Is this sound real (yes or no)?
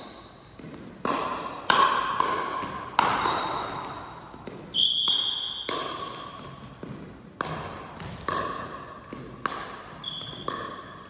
yes